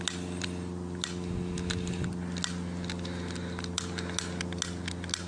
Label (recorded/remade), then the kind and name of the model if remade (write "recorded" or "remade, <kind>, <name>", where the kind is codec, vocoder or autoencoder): recorded